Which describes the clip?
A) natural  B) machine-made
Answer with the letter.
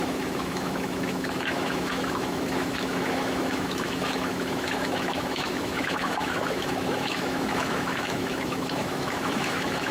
B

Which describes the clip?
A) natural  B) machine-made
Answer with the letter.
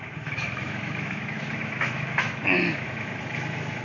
B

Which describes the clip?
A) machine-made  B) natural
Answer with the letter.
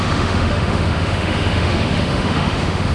A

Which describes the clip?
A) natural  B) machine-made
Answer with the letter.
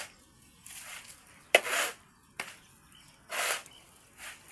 A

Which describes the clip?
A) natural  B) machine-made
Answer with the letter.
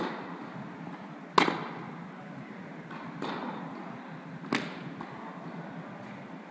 A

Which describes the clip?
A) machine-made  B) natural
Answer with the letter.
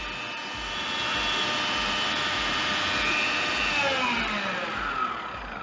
B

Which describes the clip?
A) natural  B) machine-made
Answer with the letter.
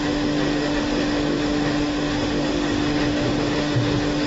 B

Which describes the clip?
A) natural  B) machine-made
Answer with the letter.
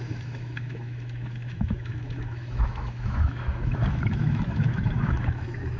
B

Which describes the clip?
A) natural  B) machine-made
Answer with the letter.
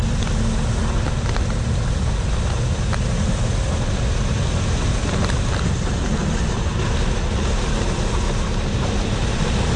A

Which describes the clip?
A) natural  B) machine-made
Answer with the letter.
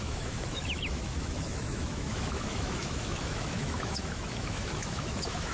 B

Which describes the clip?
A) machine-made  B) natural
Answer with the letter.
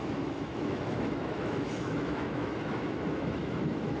A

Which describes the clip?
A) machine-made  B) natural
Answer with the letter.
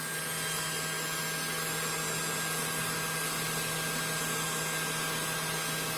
B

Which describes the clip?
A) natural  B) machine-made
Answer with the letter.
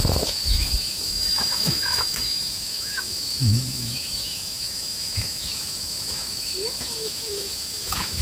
B